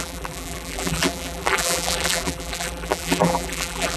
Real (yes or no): no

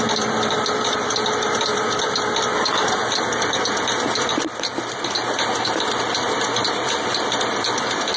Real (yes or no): no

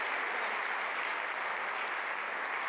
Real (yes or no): yes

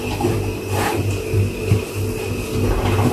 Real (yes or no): yes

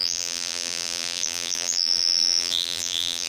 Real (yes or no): no